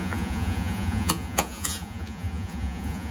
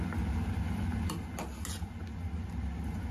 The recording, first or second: second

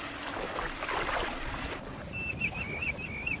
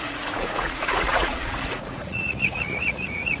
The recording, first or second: first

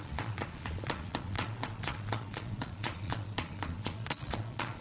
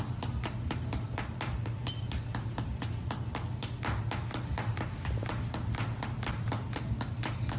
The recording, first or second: second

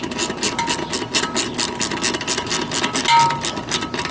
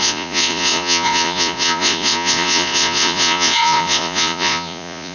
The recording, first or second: first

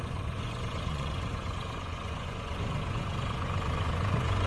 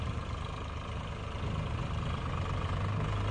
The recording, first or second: second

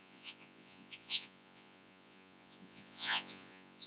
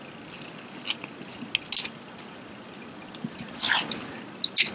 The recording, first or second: second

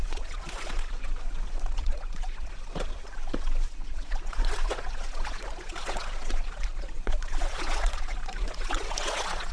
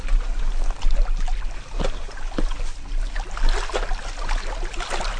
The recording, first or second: second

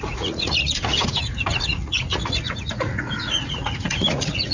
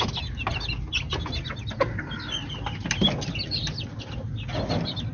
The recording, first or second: second